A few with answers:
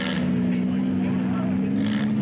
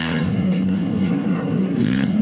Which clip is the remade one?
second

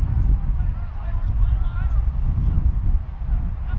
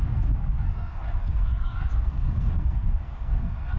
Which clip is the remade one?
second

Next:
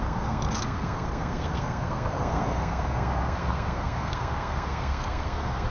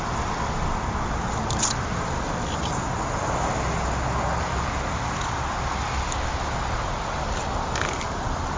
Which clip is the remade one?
first